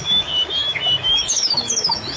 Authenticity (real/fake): fake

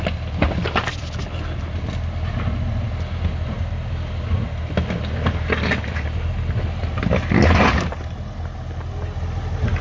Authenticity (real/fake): real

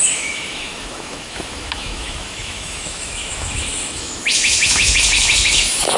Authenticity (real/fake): fake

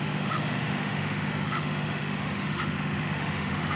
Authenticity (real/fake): fake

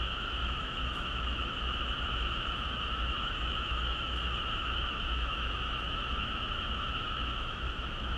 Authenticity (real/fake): fake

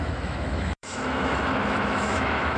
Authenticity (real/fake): fake